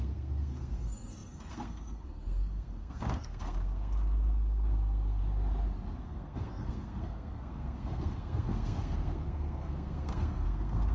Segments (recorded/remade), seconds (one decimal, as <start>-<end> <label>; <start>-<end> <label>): 0.0-5.2 remade; 5.2-6.0 recorded; 6.0-10.9 remade